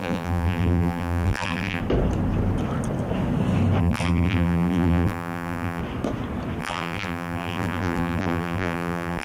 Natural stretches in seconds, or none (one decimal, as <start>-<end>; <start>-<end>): 1.8-3.8; 5.8-6.6